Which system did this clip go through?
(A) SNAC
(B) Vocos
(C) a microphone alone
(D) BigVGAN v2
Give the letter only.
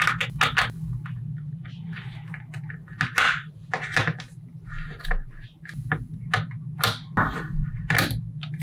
C